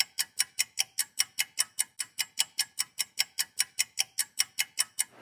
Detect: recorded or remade recorded